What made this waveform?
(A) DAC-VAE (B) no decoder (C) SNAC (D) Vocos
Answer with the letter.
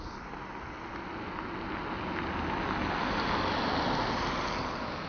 B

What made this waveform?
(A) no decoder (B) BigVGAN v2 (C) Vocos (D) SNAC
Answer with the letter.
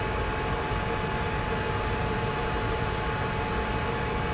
A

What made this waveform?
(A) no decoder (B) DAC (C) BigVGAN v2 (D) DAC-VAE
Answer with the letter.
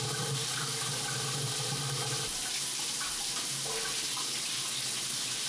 A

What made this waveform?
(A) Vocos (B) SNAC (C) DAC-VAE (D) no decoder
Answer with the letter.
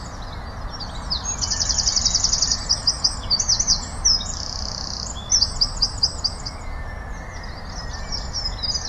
D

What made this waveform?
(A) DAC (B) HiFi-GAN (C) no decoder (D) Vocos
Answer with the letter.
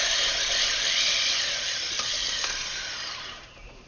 C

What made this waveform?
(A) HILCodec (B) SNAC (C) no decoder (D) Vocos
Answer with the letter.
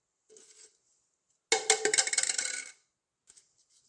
C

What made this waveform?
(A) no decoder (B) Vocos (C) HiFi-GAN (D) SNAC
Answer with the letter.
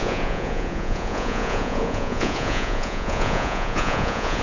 B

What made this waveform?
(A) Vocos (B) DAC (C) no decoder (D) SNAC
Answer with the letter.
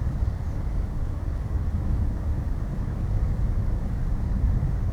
B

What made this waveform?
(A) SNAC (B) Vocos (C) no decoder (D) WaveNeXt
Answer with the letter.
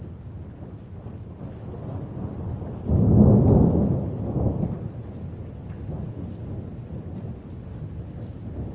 C